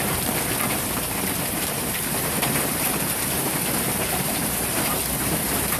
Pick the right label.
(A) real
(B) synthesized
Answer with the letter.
B